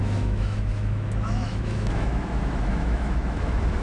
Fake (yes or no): yes